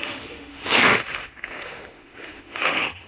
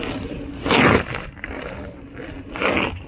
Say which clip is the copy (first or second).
first